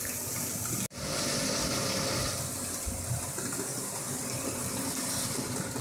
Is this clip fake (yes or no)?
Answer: no